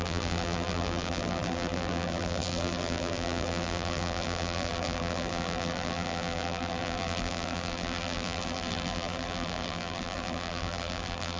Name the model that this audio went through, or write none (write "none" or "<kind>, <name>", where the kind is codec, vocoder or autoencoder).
vocoder, BigVGAN v2